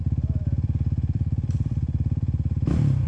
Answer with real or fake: fake